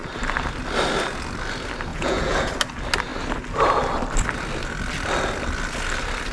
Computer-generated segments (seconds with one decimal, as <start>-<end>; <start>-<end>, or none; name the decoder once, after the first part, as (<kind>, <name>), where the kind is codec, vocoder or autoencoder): 1.9-2.5 (vocoder, Vocos)